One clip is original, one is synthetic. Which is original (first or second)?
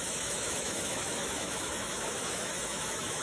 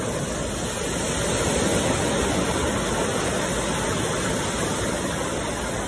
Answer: second